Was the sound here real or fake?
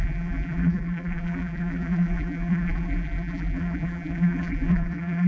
fake